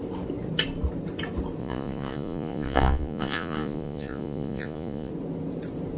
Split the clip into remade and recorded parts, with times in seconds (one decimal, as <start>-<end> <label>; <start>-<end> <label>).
0.0-1.6 recorded; 1.6-5.1 remade; 5.1-6.0 recorded

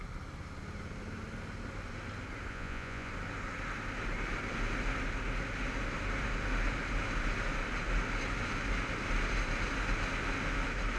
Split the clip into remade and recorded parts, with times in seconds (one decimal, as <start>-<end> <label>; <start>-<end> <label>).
0.0-2.5 recorded; 2.5-3.1 remade; 3.1-11.0 recorded

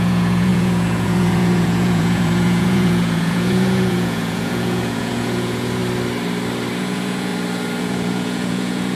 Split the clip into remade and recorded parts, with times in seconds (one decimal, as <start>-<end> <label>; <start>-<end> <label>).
0.0-5.8 remade; 5.8-6.8 recorded; 6.8-7.3 remade; 7.3-7.8 recorded; 7.8-9.0 remade

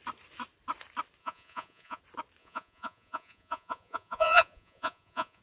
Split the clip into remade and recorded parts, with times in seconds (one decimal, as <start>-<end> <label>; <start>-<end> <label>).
0.0-1.2 recorded; 1.2-2.0 remade; 2.0-2.4 recorded; 2.4-5.4 remade

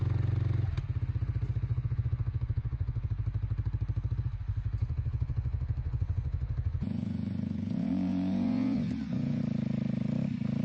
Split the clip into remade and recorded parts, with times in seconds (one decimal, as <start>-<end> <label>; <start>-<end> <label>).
0.0-1.7 recorded; 1.7-3.1 remade; 3.1-4.8 recorded; 4.8-9.4 remade; 9.4-10.6 recorded

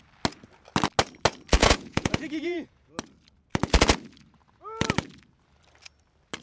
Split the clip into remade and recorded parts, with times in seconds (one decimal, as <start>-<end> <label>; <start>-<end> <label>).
0.0-1.6 recorded; 1.6-2.9 remade; 2.9-6.4 recorded

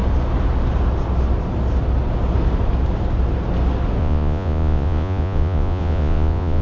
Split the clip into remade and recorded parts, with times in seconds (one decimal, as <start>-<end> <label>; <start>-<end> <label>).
0.0-4.0 recorded; 4.0-6.6 remade

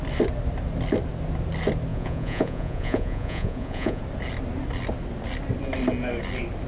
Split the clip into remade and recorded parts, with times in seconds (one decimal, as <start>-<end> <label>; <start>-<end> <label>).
0.0-1.9 recorded; 1.9-4.0 remade; 4.0-6.7 recorded